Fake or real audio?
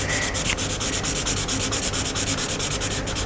real